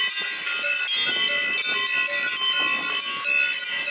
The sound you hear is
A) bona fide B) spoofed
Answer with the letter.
A